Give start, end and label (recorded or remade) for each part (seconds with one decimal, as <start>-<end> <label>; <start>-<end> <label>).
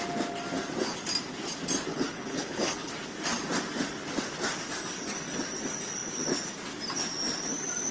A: 0.0-1.9 recorded; 1.9-2.9 remade; 2.9-7.9 recorded